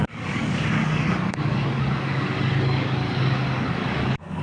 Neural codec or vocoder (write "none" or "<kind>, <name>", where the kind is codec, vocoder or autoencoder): codec, DAC